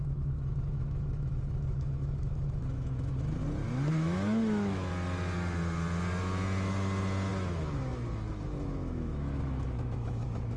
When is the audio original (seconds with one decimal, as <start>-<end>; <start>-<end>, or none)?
3.4-3.9; 4.9-7.3